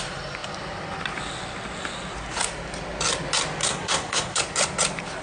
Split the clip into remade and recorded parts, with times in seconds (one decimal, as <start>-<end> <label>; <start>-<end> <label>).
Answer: 0.0-3.6 recorded; 3.6-4.4 remade; 4.4-5.2 recorded